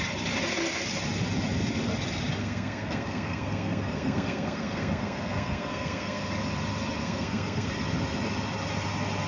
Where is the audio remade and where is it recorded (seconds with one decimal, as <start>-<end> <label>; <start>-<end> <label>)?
0.0-2.4 recorded; 2.4-6.2 remade; 6.2-7.0 recorded; 7.0-7.7 remade; 7.7-9.3 recorded